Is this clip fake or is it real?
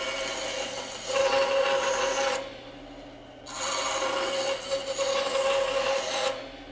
real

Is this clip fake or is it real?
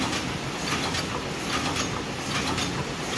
real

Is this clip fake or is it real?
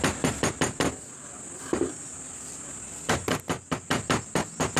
real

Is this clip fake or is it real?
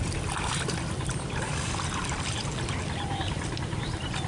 real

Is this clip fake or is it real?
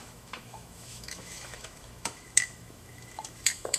fake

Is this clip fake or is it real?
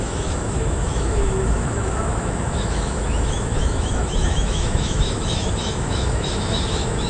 fake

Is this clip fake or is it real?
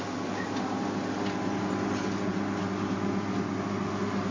real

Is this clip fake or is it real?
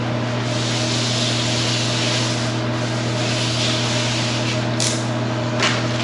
real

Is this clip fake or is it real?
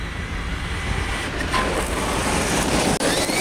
real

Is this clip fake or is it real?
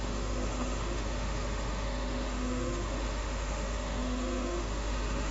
fake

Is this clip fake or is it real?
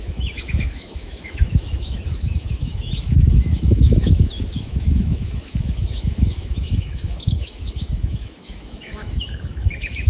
fake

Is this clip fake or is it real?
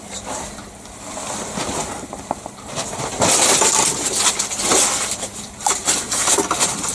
real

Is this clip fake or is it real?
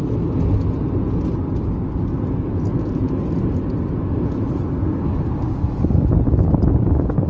real